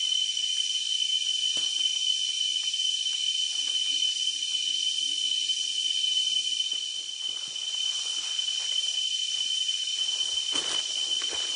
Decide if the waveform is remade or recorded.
recorded